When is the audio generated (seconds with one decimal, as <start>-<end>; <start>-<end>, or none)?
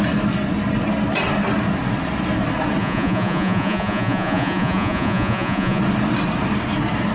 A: 2.8-5.8